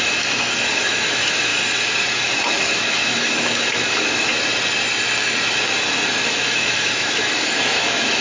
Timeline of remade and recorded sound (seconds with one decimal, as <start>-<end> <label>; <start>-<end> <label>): 0.0-1.5 remade; 1.5-2.1 recorded; 2.1-4.3 remade; 4.3-6.1 recorded; 6.1-8.2 remade